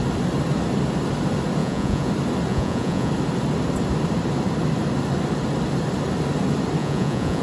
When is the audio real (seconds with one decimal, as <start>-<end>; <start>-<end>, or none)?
0.0-1.6; 2.1-2.5; 3.1-6.8